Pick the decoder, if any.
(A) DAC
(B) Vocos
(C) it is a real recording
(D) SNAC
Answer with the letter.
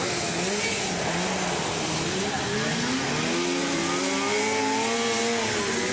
C